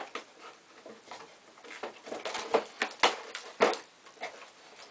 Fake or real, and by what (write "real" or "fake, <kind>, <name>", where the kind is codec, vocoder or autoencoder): real